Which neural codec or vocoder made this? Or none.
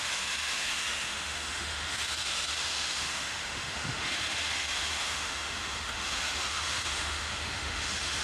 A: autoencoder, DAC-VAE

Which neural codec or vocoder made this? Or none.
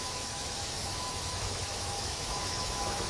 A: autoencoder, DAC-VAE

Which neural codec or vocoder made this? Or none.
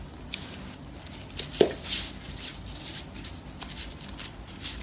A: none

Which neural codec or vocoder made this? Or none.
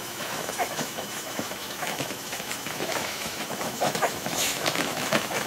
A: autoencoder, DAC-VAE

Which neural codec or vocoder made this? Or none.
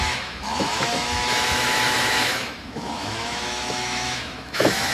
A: autoencoder, DAC-VAE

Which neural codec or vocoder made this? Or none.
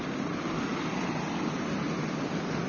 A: none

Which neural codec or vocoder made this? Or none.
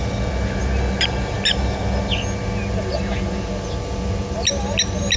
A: none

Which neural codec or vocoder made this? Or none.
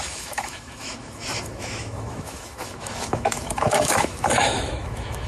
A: autoencoder, DAC-VAE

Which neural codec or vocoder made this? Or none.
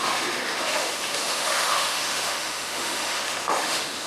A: autoencoder, DAC-VAE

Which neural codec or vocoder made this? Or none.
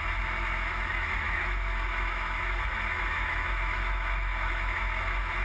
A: autoencoder, DAC-VAE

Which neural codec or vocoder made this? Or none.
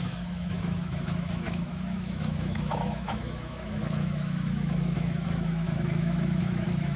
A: autoencoder, DAC-VAE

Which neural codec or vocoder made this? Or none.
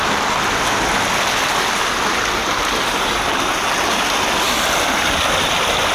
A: none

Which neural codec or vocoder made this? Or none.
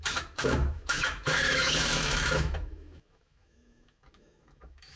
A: autoencoder, DAC-VAE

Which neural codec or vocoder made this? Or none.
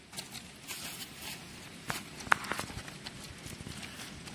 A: none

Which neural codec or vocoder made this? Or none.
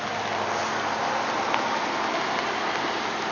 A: none